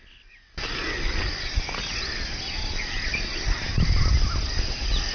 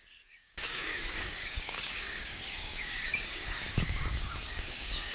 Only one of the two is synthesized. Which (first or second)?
second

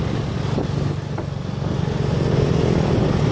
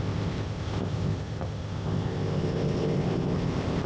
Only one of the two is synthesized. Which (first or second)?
second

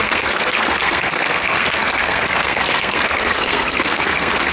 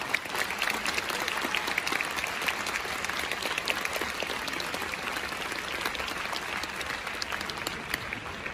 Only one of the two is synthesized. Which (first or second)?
first